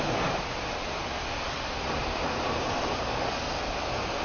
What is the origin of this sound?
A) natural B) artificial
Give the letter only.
A